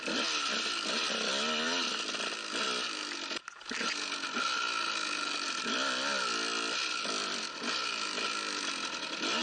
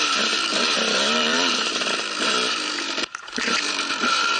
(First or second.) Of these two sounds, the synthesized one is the second